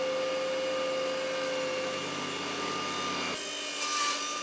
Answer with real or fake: real